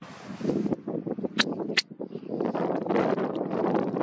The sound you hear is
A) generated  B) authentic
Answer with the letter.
B